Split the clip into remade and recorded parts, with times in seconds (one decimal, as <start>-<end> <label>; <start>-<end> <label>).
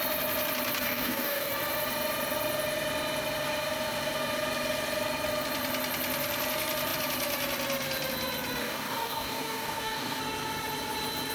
0.0-0.8 recorded; 0.8-1.5 remade; 1.5-8.6 recorded; 8.6-10.2 remade; 10.2-11.3 recorded